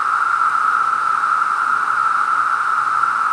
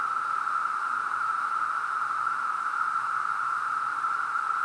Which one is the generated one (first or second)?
second